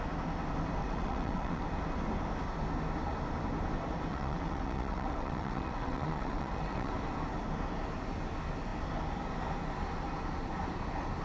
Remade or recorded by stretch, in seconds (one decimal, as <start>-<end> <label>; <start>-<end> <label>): 0.0-0.8 recorded; 0.8-1.6 remade; 1.6-4.1 recorded; 4.1-6.9 remade; 6.9-11.2 recorded